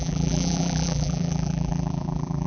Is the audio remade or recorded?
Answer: remade